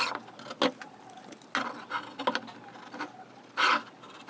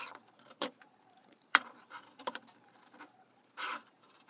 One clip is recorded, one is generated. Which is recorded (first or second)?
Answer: first